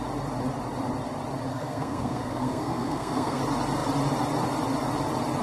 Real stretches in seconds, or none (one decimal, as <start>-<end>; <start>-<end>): 0.0-1.5; 3.4-5.4